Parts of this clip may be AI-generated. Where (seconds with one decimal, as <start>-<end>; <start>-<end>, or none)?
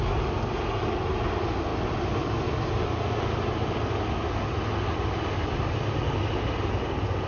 none